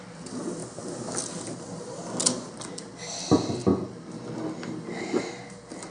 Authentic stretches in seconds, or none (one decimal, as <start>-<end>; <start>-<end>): 0.0-5.9